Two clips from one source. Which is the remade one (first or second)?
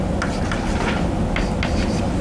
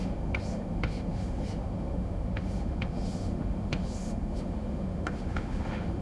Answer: second